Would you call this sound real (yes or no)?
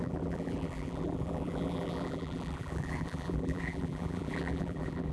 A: no